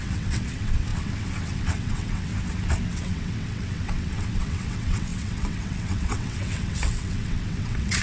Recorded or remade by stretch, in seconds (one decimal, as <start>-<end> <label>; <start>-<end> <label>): 0.0-2.3 remade; 2.3-2.9 recorded; 2.9-8.0 remade